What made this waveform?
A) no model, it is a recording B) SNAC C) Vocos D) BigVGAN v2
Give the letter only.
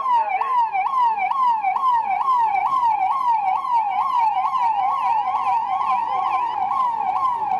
A